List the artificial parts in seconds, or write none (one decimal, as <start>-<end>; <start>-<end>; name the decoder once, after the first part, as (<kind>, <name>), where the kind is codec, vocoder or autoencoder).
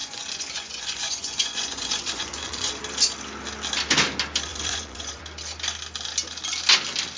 0.0-2.7 (vocoder, Vocos); 4.5-5.2